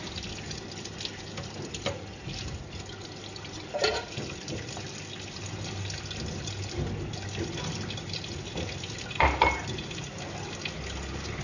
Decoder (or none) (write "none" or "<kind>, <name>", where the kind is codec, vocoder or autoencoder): none